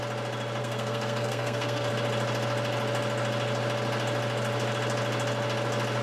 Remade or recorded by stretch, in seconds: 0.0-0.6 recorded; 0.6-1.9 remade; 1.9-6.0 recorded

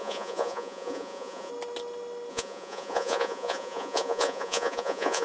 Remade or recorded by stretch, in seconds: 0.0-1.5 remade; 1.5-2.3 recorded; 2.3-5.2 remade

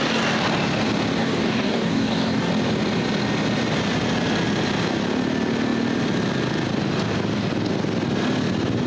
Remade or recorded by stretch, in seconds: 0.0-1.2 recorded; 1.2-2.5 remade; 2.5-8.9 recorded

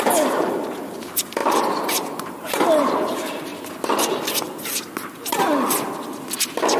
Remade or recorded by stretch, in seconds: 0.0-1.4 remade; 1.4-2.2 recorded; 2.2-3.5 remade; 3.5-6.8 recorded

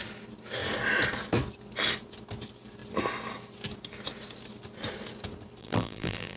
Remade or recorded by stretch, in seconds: 0.0-5.6 recorded; 5.6-6.4 remade

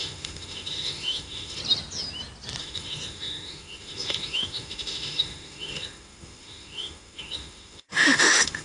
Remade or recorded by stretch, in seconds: 0.0-1.6 remade; 1.6-2.6 recorded; 2.6-8.6 remade

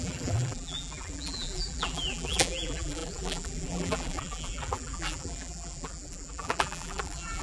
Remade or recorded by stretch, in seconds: 0.0-7.4 remade

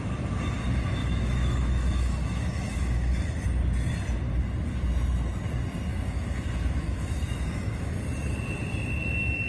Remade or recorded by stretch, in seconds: 0.0-1.0 recorded; 1.0-3.1 remade; 3.1-5.9 recorded; 5.9-7.9 remade; 7.9-9.5 recorded